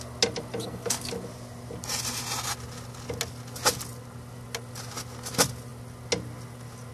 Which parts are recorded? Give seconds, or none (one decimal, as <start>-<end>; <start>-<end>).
0.0-0.6; 1.1-6.9

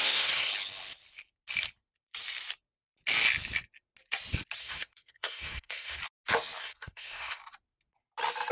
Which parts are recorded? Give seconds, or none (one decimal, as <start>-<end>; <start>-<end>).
0.5-4.6; 6.0-6.6; 7.4-8.5

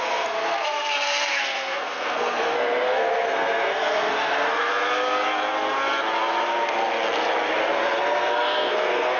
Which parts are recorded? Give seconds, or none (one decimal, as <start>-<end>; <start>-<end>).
4.7-8.0

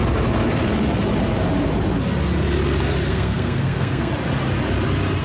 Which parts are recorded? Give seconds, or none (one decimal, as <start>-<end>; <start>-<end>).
0.0-3.1; 4.1-5.2

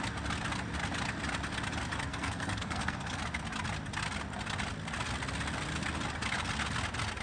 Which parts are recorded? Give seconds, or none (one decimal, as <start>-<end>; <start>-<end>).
0.0-2.1; 3.2-7.2